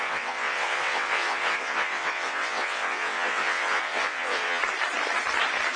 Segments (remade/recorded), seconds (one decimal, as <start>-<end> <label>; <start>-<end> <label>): 0.0-4.6 remade; 4.6-5.8 recorded